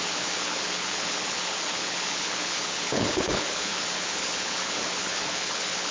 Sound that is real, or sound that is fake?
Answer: fake